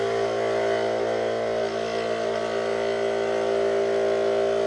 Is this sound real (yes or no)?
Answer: yes